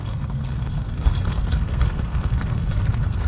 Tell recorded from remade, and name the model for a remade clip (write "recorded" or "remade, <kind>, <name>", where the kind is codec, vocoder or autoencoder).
remade, codec, SNAC